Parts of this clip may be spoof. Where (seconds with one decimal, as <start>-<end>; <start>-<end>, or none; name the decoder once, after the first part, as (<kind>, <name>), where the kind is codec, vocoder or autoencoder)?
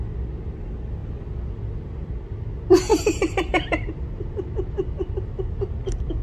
2.9-4.5 (vocoder, BigVGAN v2)